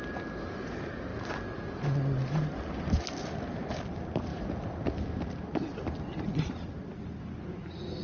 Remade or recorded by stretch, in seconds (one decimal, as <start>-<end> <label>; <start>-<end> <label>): 0.0-4.3 recorded; 4.3-6.9 remade; 6.9-8.0 recorded